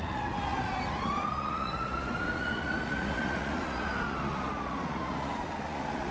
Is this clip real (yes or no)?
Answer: no